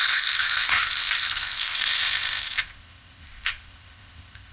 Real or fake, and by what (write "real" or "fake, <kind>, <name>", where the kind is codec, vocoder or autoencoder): fake, codec, ZipCodec